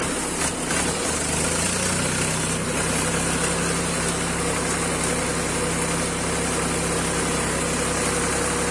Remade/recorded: recorded